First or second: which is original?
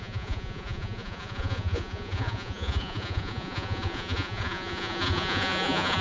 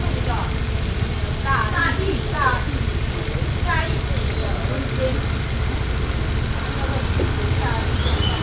second